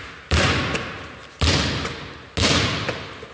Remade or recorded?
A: recorded